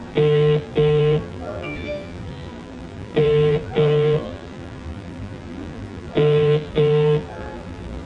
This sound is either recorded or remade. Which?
remade